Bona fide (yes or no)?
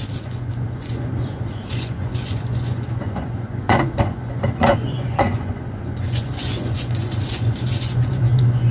no